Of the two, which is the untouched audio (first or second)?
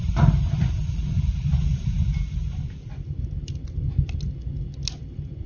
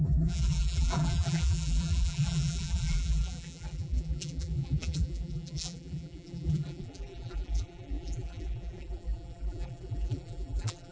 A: first